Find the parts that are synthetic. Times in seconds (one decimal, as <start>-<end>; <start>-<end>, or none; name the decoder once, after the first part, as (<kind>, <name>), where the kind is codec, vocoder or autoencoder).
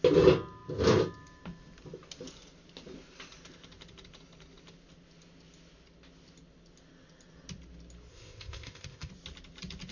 8.1-9.1 (codec, ZipCodec)